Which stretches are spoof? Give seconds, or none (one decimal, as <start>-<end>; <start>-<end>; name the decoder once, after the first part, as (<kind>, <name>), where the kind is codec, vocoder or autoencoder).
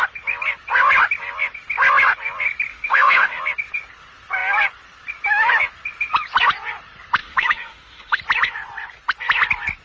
2.7-3.4 (autoencoder, DAC-VAE); 7.2-8.2